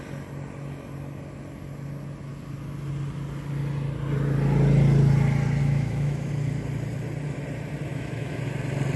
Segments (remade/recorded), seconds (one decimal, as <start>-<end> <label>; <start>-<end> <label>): 0.0-5.6 recorded; 5.6-6.3 remade; 6.3-7.9 recorded; 7.9-8.4 remade; 8.4-9.0 recorded